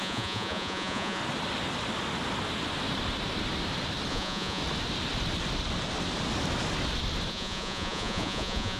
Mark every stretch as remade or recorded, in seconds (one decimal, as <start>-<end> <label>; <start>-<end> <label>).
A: 0.0-1.2 remade; 1.2-4.1 recorded; 4.1-4.6 remade; 4.6-7.3 recorded; 7.3-8.8 remade